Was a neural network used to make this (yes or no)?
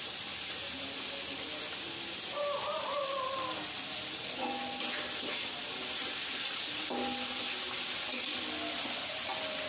no